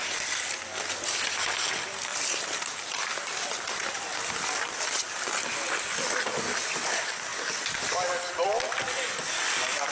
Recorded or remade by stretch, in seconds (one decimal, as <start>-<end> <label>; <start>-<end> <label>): 0.0-2.1 recorded; 2.1-3.4 remade; 3.4-9.9 recorded